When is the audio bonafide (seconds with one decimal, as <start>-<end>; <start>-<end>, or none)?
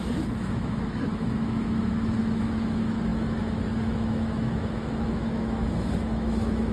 none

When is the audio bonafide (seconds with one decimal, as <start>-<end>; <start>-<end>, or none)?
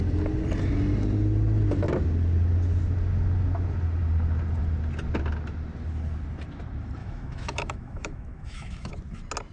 0.0-7.0; 8.9-9.5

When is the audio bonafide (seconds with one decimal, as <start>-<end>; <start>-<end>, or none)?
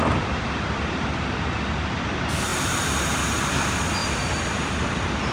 0.0-5.3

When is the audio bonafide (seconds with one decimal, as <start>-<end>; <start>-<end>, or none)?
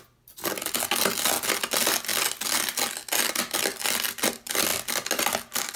0.0-5.8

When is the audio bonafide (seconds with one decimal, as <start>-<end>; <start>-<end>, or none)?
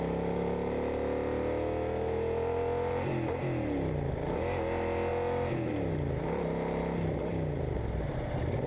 0.0-8.7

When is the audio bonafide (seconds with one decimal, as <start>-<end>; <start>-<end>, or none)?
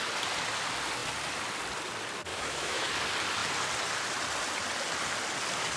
0.0-2.3; 2.9-5.8